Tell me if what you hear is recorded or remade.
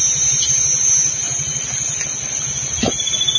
recorded